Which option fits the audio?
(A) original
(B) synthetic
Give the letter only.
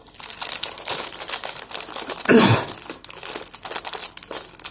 A